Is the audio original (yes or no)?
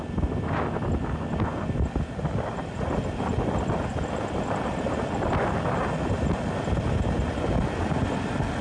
yes